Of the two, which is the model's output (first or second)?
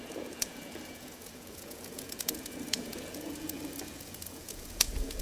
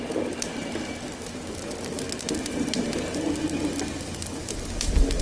first